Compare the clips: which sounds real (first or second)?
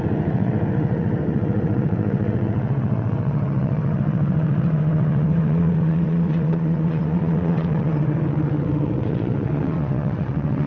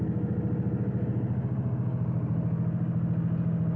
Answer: second